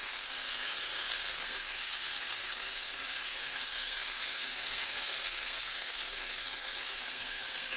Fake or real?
fake